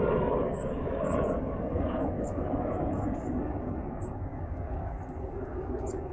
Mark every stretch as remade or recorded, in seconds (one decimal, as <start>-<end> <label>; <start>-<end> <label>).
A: 0.0-6.1 remade

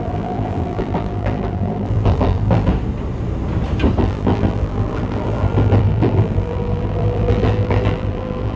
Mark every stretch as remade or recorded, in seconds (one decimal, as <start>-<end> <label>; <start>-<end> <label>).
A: 0.0-2.7 remade; 2.7-4.0 recorded; 4.0-8.6 remade

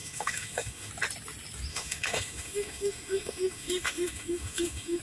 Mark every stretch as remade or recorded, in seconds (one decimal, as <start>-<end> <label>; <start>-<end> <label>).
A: 0.0-0.9 remade; 0.9-1.7 recorded; 1.7-5.0 remade

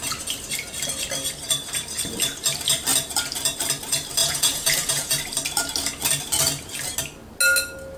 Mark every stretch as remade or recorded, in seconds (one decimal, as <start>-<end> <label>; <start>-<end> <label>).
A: 0.0-4.2 recorded; 4.2-5.1 remade; 5.1-8.0 recorded

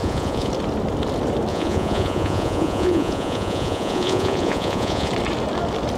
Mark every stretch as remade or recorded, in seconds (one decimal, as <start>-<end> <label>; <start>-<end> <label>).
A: 0.0-0.5 remade; 0.5-1.5 recorded; 1.5-5.1 remade; 5.1-6.0 recorded

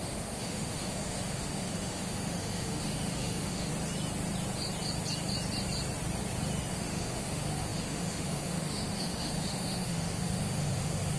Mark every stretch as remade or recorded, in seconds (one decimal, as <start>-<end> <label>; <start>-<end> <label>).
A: 0.0-3.7 remade; 3.7-6.7 recorded; 6.7-11.2 remade

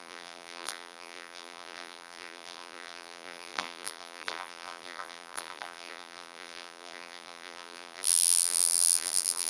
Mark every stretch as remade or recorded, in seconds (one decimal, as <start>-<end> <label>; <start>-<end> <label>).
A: 0.0-9.5 remade

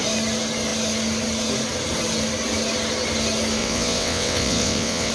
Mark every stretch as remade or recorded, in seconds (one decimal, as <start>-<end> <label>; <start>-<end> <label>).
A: 0.0-3.6 recorded; 3.6-5.1 remade